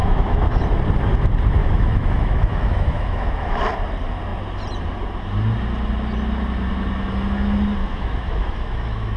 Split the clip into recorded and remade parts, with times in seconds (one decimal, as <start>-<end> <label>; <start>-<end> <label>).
0.0-0.6 remade; 0.6-1.6 recorded; 1.6-3.6 remade; 3.6-7.8 recorded; 7.8-9.2 remade